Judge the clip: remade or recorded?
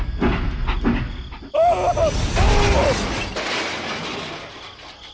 recorded